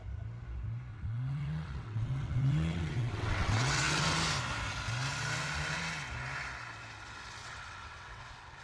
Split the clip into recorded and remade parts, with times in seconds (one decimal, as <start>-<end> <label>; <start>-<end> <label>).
0.0-0.9 recorded; 0.9-4.0 remade; 4.0-7.4 recorded; 7.4-8.6 remade